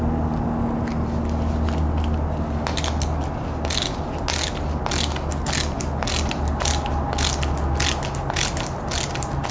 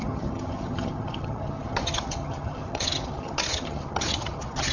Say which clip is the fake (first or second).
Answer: second